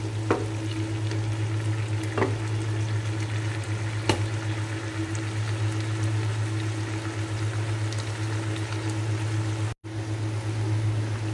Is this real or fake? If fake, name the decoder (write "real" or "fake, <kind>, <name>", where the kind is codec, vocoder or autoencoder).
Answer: real